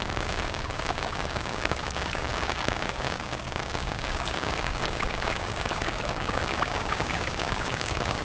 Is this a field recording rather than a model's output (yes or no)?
no